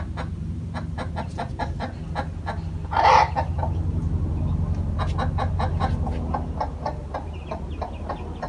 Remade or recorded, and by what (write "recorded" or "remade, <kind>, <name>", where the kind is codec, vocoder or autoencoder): recorded